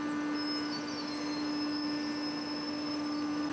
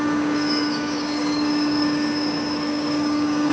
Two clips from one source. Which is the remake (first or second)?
second